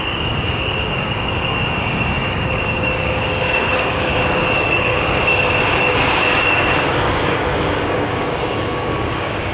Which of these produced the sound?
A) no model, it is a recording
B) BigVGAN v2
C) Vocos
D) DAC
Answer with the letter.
D